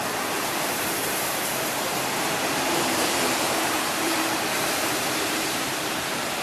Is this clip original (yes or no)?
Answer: no